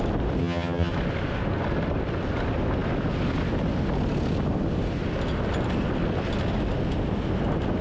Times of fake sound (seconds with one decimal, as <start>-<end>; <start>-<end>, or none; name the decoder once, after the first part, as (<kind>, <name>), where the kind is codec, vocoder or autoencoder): 0.4-0.9 (vocoder, HiFi-GAN)